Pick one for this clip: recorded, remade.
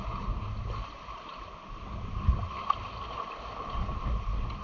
recorded